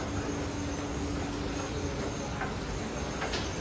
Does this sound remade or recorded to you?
recorded